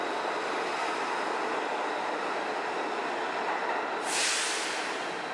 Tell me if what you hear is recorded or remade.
recorded